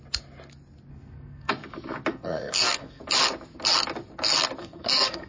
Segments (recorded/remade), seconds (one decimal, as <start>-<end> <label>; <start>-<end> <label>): 0.0-0.9 recorded; 0.9-1.5 remade; 1.5-2.1 recorded; 2.1-3.0 remade; 3.0-4.6 recorded; 4.6-5.3 remade